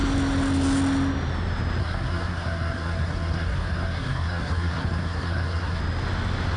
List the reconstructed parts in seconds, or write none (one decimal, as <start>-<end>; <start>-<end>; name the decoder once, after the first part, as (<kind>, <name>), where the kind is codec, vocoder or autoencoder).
1.8-5.8 (codec, SNAC)